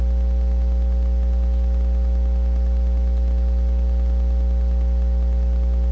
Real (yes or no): yes